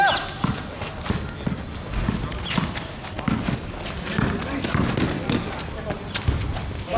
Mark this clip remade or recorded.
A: recorded